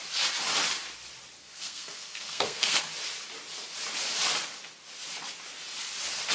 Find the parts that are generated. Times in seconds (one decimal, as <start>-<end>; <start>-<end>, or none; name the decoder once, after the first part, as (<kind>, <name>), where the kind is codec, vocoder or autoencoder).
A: 1.4-2.8 (codec, SNAC)